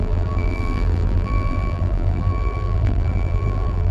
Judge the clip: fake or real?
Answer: fake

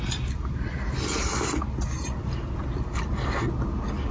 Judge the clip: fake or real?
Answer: real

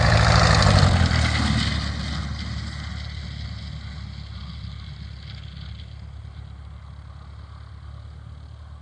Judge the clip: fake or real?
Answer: real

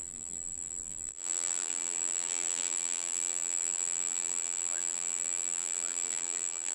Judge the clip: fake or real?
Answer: fake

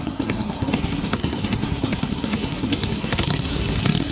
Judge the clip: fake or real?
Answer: fake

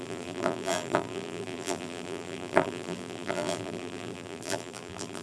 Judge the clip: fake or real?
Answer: fake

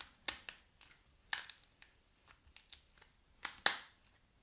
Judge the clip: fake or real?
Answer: real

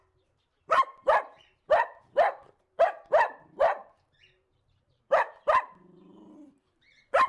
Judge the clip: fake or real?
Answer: fake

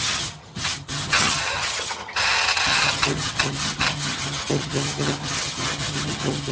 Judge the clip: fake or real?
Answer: fake